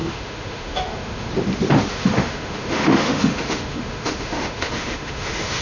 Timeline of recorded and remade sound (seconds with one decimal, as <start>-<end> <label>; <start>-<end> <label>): 0.0-1.3 remade; 1.3-1.9 recorded; 1.9-5.6 remade